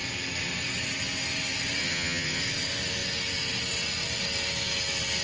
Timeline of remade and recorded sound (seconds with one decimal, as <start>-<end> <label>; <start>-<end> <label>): 0.0-1.8 recorded; 1.8-2.4 remade; 2.4-5.2 recorded